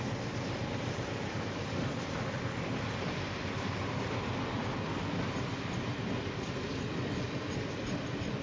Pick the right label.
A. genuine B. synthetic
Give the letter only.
A